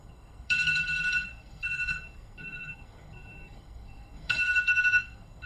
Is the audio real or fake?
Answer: fake